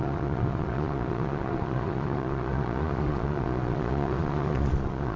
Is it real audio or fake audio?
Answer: fake